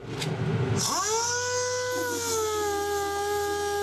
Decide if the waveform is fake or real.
real